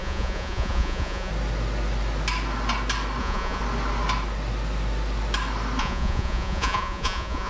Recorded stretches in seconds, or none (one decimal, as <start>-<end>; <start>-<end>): 1.3-3.2; 3.6-5.8

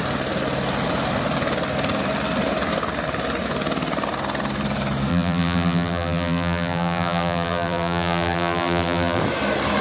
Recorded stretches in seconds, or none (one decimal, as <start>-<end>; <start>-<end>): 0.0-5.1; 9.2-9.8

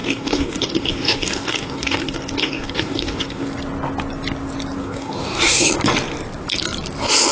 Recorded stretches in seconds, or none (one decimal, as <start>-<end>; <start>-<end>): 3.5-4.8; 5.7-7.3

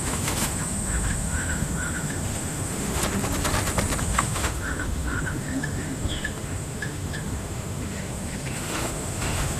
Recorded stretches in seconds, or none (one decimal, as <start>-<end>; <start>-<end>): 3.0-4.0

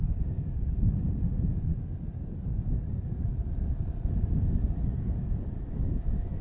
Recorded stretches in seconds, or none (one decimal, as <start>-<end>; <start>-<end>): 0.0-6.4